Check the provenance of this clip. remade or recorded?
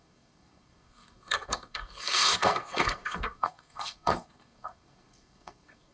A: remade